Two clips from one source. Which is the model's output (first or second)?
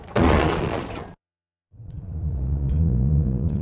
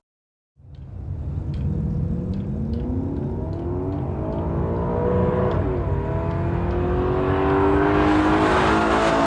first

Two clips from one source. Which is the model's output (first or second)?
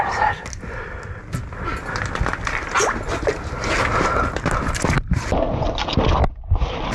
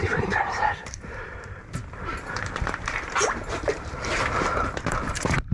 second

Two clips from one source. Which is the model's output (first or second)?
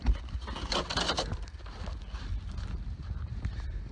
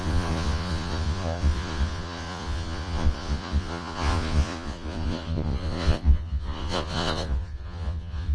second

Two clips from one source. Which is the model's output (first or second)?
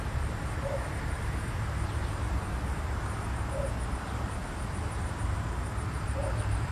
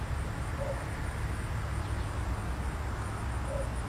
first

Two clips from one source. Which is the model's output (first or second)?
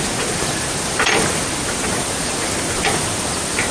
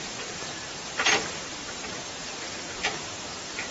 second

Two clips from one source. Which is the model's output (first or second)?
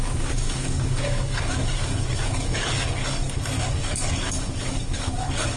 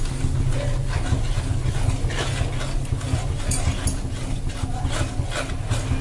first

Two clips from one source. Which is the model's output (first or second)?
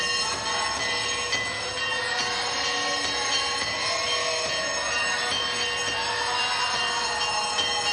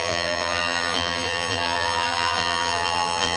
second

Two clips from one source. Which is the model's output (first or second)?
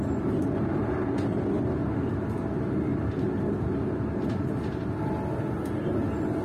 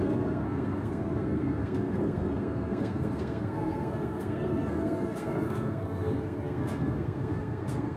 second